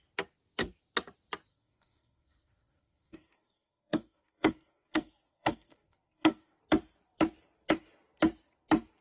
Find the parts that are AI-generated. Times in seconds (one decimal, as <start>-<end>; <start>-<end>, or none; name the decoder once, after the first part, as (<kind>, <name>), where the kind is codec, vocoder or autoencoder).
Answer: 1.5-6.6 (codec, SNAC)